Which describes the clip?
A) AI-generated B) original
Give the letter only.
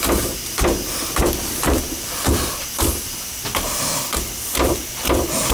B